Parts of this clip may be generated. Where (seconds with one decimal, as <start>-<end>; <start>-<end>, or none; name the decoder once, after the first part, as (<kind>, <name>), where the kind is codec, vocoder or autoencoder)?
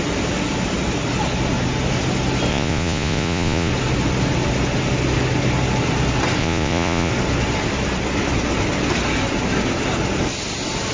2.5-3.7 (vocoder, Vocos); 6.4-7.1